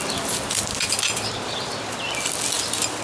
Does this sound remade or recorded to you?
recorded